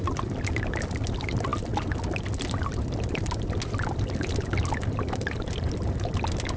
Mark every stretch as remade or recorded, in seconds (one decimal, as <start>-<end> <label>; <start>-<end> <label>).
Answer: 0.0-6.6 recorded